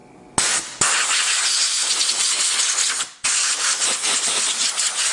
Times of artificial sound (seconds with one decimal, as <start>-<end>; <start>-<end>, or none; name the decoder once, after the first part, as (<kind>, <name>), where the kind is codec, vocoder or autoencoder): none